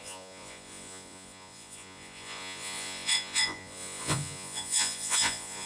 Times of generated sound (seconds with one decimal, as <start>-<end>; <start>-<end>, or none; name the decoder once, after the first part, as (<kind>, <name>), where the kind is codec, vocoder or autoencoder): 0.0-5.7 (vocoder, Vocos)